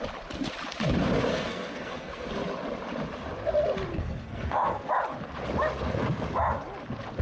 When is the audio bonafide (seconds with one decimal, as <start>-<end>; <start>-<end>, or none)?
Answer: 0.0-1.3; 2.3-3.9; 4.9-7.2